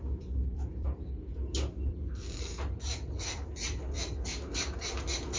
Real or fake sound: fake